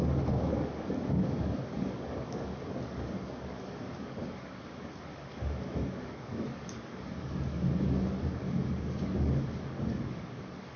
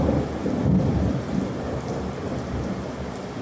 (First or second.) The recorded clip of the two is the second